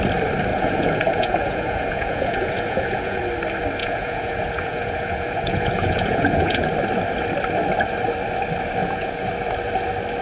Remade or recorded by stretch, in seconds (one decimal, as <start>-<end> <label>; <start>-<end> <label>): 0.0-0.5 recorded; 0.5-3.2 remade; 3.2-3.8 recorded; 3.8-6.7 remade; 6.7-8.8 recorded; 8.8-9.3 remade; 9.3-10.2 recorded